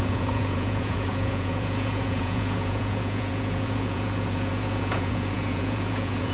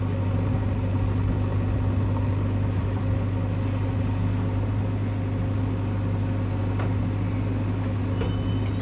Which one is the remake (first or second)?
first